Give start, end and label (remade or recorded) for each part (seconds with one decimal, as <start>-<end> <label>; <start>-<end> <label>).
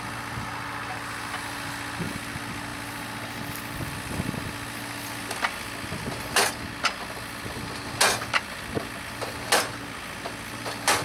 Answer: 0.0-11.0 recorded